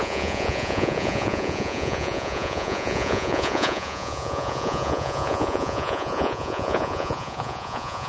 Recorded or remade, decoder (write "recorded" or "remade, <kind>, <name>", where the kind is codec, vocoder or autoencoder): remade, vocoder, Vocos